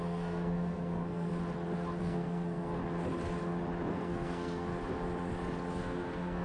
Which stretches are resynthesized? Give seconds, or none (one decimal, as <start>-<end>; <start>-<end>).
0.0-1.3; 2.0-2.8; 3.9-4.7; 5.8-6.4